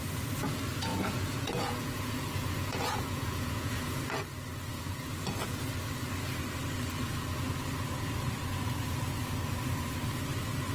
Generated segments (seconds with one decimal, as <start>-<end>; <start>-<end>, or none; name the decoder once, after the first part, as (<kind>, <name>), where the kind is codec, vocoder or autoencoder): 0.9-4.0 (vocoder, Vocos); 4.7-5.6